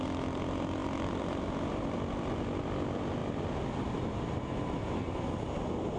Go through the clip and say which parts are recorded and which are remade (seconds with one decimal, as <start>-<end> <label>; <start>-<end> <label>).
0.0-0.8 recorded; 0.8-1.8 remade; 1.8-6.0 recorded